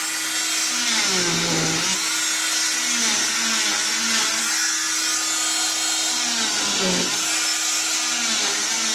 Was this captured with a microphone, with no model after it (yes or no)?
yes